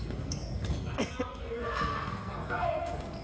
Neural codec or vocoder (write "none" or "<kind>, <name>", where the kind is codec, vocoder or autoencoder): codec, SNAC